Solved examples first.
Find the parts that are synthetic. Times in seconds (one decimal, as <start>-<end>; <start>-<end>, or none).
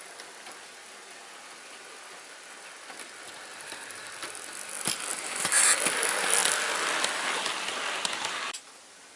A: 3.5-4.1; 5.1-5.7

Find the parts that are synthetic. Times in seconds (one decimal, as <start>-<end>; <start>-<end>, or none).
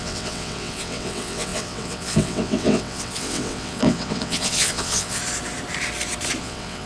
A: 0.0-5.2; 6.4-6.9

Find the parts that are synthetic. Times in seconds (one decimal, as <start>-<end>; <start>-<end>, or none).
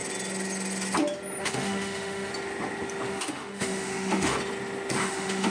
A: 1.4-2.3; 3.1-4.3; 5.0-5.5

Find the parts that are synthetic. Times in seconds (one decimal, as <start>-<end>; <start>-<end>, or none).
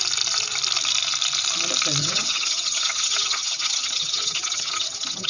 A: 2.0-5.3